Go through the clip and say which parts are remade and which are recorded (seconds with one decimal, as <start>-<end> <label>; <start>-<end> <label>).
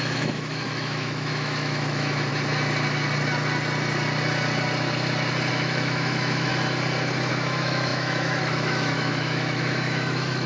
0.0-2.3 remade; 2.3-5.5 recorded; 5.5-6.5 remade; 6.5-7.3 recorded; 7.3-10.5 remade